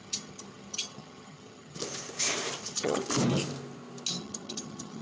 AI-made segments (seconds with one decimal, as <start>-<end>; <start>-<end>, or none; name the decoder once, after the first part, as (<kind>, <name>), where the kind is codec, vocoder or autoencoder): 0.0-1.8 (vocoder, HiFi-GAN); 2.6-3.0; 4.2-5.0